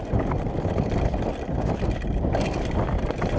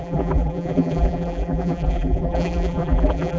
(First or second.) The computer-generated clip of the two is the second